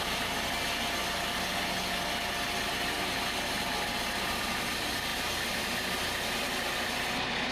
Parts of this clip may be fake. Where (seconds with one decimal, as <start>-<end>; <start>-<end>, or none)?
none